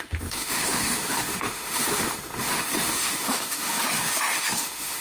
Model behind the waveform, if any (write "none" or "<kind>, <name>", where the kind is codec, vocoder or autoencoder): autoencoder, DAC-VAE